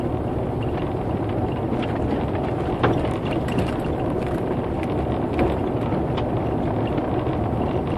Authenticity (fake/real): real